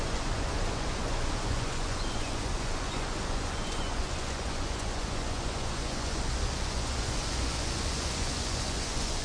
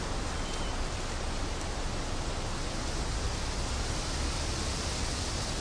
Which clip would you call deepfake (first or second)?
first